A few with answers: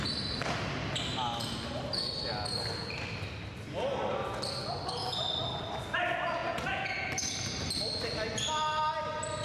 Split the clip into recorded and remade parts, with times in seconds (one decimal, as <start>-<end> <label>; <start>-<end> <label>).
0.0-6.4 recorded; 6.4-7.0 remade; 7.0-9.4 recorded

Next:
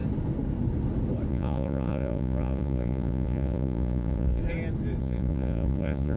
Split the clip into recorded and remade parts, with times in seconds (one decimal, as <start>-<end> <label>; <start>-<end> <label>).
0.0-1.3 recorded; 1.3-4.4 remade; 4.4-5.0 recorded; 5.0-6.2 remade

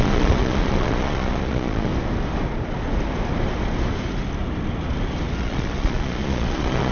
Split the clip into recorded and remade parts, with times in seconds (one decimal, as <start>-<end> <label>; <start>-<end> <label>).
0.0-1.9 remade; 1.9-5.4 recorded; 5.4-6.9 remade

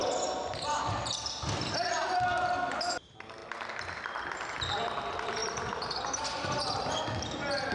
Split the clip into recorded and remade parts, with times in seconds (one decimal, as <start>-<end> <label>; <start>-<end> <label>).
0.0-7.7 recorded

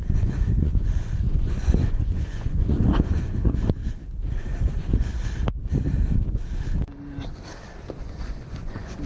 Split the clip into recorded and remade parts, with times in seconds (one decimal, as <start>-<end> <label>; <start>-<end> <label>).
0.0-3.8 remade; 3.8-4.3 recorded; 4.3-5.1 remade; 5.1-8.0 recorded; 8.0-9.1 remade